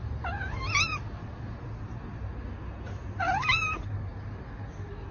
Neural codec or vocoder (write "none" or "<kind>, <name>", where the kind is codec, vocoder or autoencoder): none